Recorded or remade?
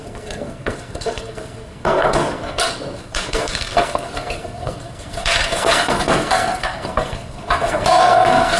remade